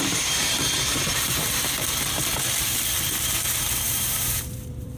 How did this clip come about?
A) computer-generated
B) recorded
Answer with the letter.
A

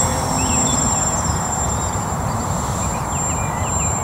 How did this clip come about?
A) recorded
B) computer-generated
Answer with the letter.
B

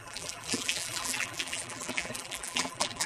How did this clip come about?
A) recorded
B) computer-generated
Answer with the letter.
B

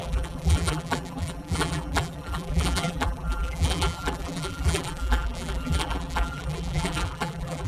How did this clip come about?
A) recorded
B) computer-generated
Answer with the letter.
B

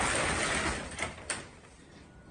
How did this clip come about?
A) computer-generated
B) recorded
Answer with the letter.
B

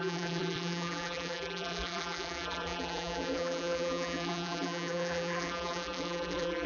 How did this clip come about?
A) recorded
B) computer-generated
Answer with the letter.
B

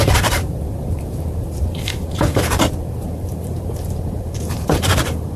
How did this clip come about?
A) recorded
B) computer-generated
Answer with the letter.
B